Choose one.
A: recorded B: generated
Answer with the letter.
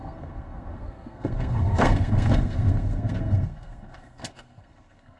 B